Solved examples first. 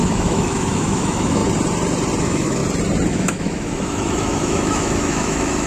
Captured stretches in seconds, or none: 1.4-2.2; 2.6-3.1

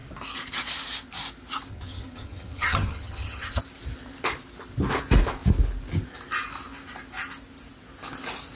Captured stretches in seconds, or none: 0.0-1.7; 3.6-8.6

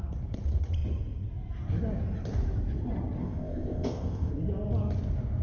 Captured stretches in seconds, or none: 0.0-3.2; 4.3-5.4

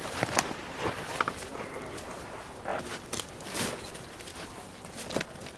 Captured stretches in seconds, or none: none